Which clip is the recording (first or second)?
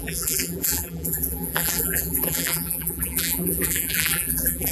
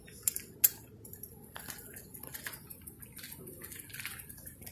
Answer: second